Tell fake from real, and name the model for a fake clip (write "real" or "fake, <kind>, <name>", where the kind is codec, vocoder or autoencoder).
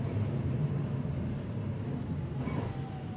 real